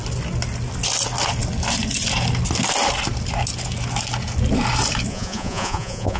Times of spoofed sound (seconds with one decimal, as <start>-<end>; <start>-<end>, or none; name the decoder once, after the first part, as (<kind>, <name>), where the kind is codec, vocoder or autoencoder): 5.1-6.2 (vocoder, Vocos)